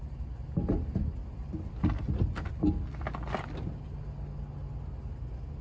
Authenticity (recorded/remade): recorded